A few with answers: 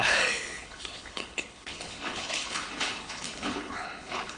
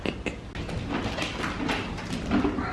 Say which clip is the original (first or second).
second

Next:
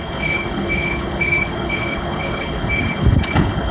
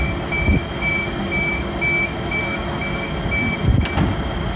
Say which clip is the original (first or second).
second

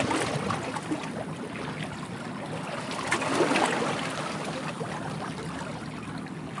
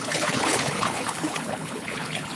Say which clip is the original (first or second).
first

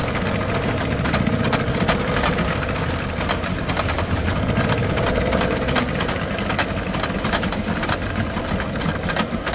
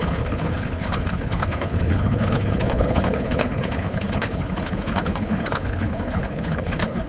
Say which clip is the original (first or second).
first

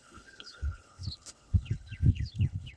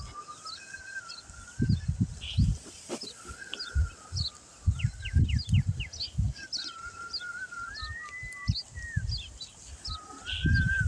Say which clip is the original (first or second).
second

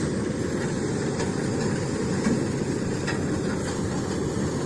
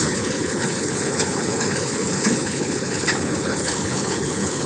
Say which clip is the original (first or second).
first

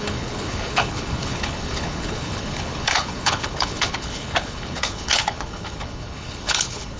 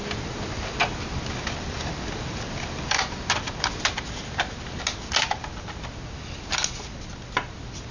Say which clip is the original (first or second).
second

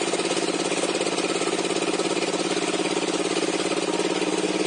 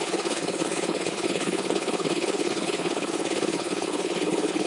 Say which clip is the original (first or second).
first